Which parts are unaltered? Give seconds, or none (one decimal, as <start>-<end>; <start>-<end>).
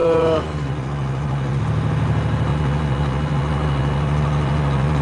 1.6-2.5